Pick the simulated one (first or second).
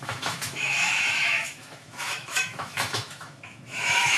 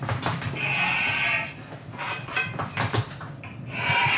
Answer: first